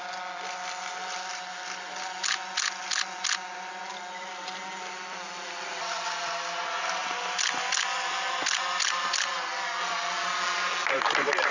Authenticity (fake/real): real